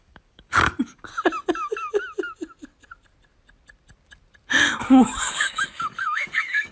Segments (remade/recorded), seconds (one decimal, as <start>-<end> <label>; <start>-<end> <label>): 0.0-1.1 remade; 1.1-4.8 recorded; 4.8-6.7 remade

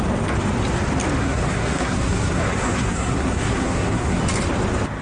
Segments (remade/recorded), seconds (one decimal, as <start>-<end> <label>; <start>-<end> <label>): 0.0-1.2 recorded; 1.2-4.2 remade; 4.2-5.0 recorded